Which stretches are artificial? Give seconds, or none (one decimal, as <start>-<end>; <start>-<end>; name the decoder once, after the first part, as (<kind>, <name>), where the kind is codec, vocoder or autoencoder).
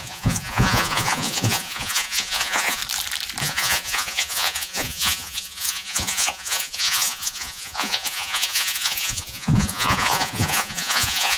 0.0-2.8 (vocoder, Vocos); 3.4-11.4